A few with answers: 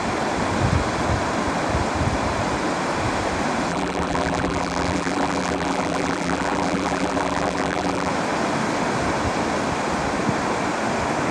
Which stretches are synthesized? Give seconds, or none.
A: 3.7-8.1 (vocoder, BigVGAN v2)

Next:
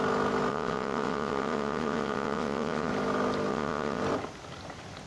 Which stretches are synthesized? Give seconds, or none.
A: 0.5-2.9 (vocoder, WaveNeXt); 3.5-4.0

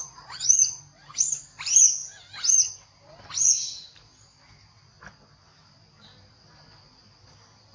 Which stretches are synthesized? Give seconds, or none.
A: 0.0-0.8 (vocoder, Vocos)